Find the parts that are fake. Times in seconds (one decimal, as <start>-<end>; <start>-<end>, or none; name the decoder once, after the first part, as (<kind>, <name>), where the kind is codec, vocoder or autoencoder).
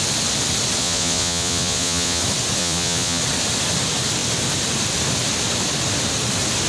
0.8-2.2 (vocoder, Vocos); 2.6-3.2